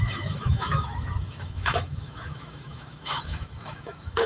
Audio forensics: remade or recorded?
remade